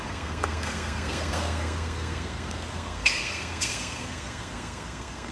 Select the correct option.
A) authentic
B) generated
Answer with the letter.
B